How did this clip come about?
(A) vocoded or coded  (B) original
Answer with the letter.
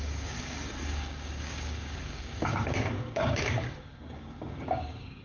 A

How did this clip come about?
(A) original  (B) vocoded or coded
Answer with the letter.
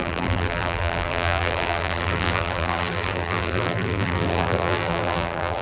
B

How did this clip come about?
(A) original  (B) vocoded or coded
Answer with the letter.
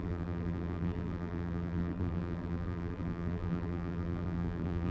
B